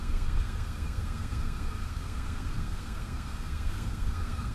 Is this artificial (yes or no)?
yes